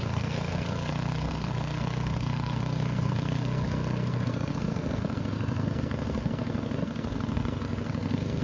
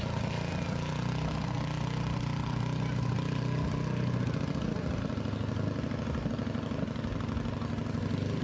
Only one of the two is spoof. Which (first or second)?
first